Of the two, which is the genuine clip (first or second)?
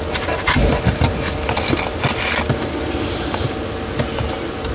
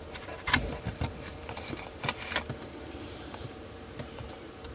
first